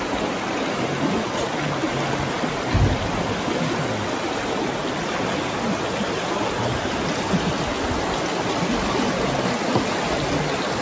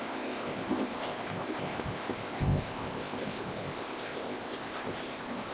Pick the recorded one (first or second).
first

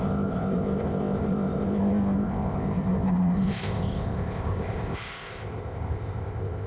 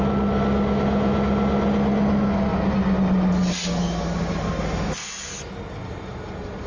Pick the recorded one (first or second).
second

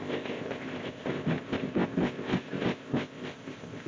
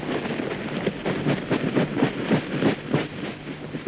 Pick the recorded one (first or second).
second